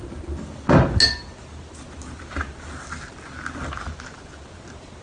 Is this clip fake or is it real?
real